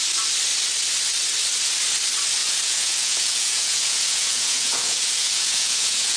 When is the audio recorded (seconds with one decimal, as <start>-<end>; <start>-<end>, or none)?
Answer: 0.0-2.4